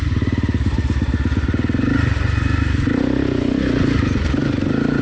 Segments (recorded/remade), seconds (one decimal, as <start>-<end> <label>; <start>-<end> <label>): 0.0-5.0 recorded